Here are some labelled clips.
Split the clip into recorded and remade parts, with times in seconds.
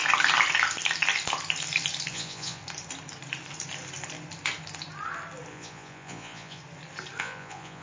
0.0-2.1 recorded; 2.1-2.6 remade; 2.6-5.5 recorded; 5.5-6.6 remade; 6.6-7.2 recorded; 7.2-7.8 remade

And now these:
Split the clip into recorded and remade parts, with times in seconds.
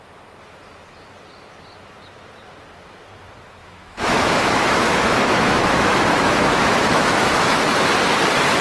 0.0-3.6 recorded; 3.6-7.6 remade; 7.6-8.6 recorded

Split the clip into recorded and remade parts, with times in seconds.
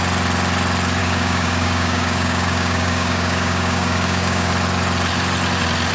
0.0-1.0 recorded; 1.0-4.5 remade; 4.5-5.9 recorded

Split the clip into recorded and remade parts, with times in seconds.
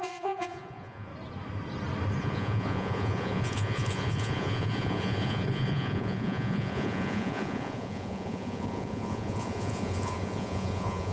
0.0-1.1 remade; 1.1-2.2 recorded; 2.2-11.1 remade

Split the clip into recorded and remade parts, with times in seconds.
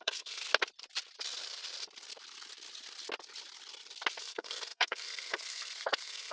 0.0-0.4 remade; 0.4-4.2 recorded; 4.2-6.3 remade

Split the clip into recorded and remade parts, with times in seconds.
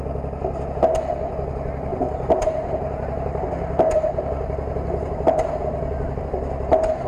0.0-1.9 recorded; 1.9-6.2 remade; 6.2-7.1 recorded